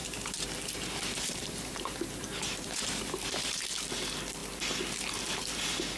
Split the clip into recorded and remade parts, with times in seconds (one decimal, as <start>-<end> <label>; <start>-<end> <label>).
0.0-3.6 remade; 3.6-6.0 recorded